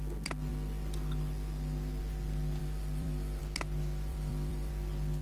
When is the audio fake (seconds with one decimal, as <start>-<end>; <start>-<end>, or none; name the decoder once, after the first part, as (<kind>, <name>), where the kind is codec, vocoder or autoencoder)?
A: 2.6-3.4 (vocoder, BigVGAN v2); 4.1-4.7